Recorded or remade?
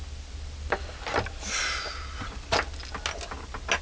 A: recorded